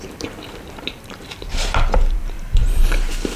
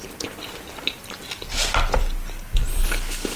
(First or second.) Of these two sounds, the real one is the second